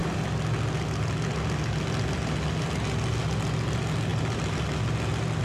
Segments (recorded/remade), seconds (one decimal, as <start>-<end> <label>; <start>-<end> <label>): 0.0-5.4 recorded